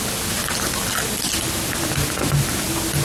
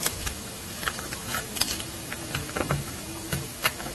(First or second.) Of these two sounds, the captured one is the first